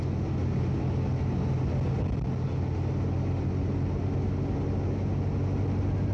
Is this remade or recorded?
recorded